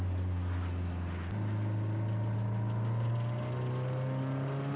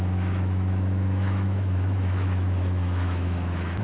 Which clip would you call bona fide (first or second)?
first